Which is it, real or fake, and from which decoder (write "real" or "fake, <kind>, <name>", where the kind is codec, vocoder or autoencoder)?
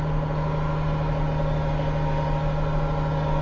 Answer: real